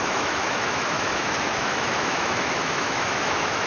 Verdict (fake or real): fake